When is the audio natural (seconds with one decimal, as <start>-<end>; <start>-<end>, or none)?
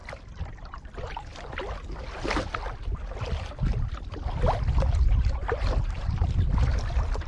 0.9-7.3